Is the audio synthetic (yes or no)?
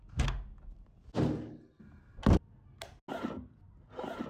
no